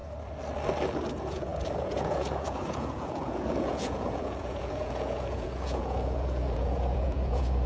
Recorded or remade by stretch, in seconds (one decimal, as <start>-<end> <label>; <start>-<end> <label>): 0.0-1.1 recorded; 1.1-7.7 remade